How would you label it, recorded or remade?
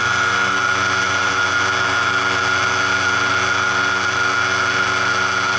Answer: recorded